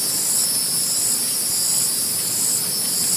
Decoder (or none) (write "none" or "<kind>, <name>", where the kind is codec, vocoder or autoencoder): none